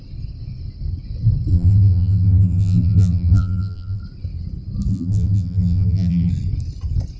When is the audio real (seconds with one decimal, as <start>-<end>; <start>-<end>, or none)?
0.0-1.5; 4.0-4.9; 6.3-7.2